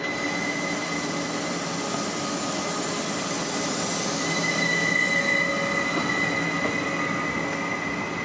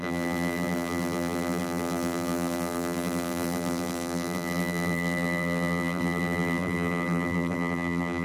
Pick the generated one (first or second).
second